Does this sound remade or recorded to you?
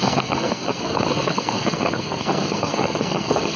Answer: remade